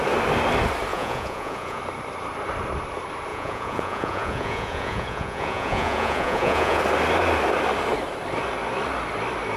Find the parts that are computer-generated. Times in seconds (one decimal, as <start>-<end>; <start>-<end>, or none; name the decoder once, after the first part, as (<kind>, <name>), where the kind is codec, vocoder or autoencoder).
0.9-1.8 (vocoder, Vocos); 3.3-6.8